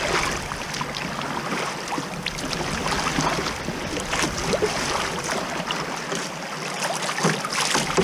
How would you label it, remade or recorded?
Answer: recorded